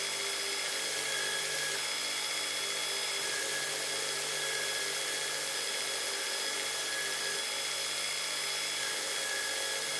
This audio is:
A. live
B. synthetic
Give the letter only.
A